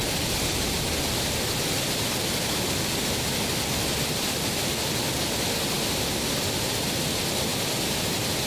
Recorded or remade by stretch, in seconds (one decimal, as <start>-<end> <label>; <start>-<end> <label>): 0.0-7.5 recorded; 7.5-8.5 remade